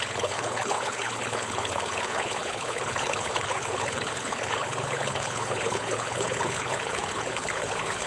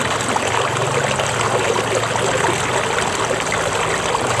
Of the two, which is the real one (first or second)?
second